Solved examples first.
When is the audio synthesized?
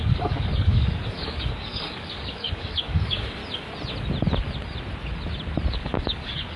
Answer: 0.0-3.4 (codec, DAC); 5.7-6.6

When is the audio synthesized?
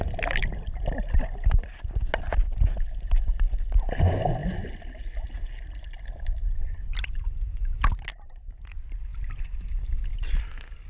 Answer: none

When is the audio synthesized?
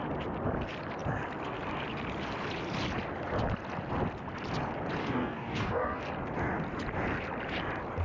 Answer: 5.0-6.0 (codec, DAC)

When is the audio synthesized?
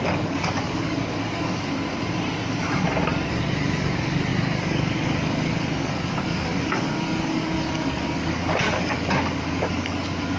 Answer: 0.0-1.7 (codec, DAC); 3.3-10.4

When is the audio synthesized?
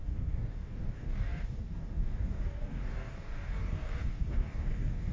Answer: 0.0-5.1 (codec, DAC)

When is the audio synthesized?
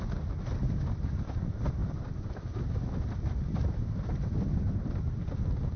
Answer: none